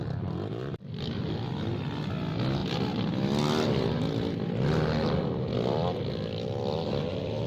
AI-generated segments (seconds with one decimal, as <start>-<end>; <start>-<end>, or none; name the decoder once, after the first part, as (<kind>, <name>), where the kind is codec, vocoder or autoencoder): none

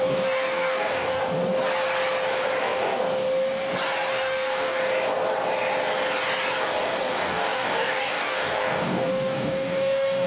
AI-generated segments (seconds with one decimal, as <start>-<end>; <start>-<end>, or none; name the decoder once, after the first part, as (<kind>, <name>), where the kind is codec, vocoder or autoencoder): 0.0-1.2 (codec, DAC); 2.6-3.0; 4.1-4.8; 6.6-10.3

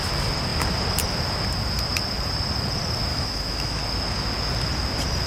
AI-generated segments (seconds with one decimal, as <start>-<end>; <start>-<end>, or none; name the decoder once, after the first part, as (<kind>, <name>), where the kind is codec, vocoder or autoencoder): 3.1-3.8 (autoencoder, DAC-VAE)

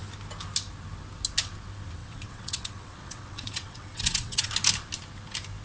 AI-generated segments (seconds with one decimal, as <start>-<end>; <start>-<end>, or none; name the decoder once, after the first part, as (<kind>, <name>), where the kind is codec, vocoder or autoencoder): 2.0-4.5 (vocoder, WaveNeXt)